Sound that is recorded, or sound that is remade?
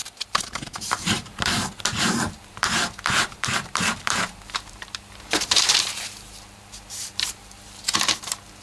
remade